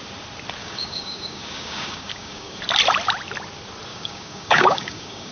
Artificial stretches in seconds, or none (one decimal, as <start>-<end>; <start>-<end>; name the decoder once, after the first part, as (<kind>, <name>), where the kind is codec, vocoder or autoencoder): 0.6-2.6 (codec, DAC); 3.9-5.3